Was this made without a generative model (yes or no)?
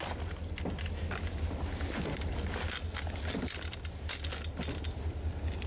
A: yes